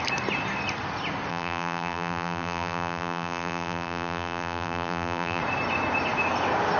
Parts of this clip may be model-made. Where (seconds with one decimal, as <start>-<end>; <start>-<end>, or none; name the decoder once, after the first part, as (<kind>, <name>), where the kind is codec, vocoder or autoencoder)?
1.3-5.4 (vocoder, BigVGAN v2)